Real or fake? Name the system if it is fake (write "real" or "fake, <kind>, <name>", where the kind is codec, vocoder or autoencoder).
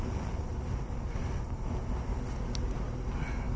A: real